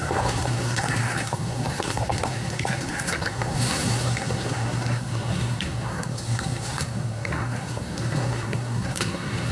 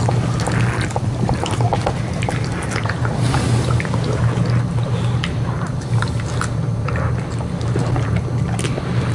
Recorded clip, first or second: second